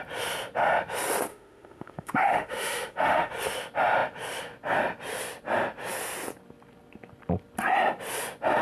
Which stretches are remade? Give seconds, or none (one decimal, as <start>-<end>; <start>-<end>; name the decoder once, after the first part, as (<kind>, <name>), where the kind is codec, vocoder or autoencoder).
1.3-3.3 (autoencoder, DAC-VAE)